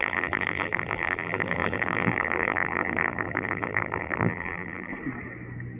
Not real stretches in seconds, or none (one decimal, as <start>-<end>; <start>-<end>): 0.0-4.9

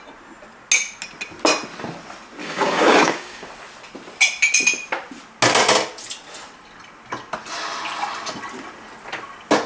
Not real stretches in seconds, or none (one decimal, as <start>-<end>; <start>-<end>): 2.4-3.5

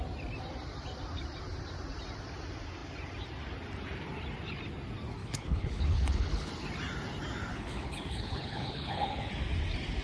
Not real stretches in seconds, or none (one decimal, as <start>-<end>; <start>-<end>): 5.2-6.5; 7.5-9.3